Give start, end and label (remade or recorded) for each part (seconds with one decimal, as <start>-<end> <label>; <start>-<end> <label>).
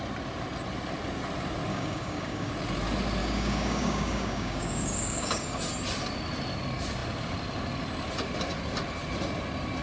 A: 0.0-1.7 recorded; 1.7-2.5 remade; 2.5-3.2 recorded; 3.2-5.6 remade; 5.6-9.8 recorded